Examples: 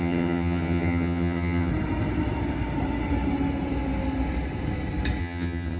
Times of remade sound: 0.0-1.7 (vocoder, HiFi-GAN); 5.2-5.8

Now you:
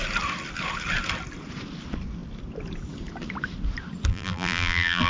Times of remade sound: 4.1-5.1 (vocoder, BigVGAN v2)

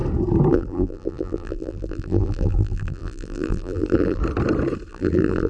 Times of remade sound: 0.5-4.2 (vocoder, BigVGAN v2); 4.9-5.5

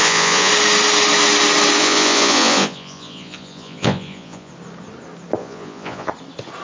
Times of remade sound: 0.0-0.5 (vocoder, Vocos); 1.8-4.5; 5.4-6.1

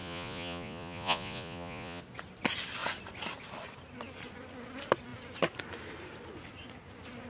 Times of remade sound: 0.0-2.0 (vocoder, Vocos)

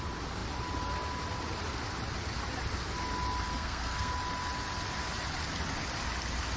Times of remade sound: 3.5-4.1 (codec, SNAC)

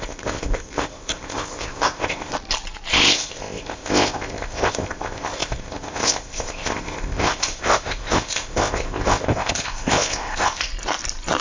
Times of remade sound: 0.0-2.3 (codec, ZipCodec); 2.9-10.7